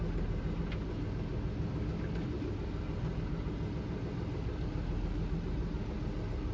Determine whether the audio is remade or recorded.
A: recorded